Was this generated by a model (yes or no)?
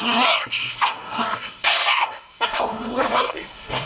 yes